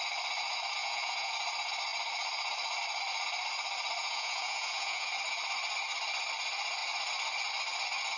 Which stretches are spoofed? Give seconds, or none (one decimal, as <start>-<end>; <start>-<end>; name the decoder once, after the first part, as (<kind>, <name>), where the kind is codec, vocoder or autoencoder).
0.8-1.3 (vocoder, Vocos); 4.0-5.1